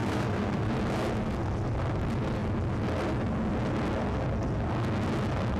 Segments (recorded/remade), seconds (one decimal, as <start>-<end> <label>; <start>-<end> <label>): 0.0-0.7 remade; 0.7-5.6 recorded